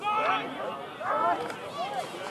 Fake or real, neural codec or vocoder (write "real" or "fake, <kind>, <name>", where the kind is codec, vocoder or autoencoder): real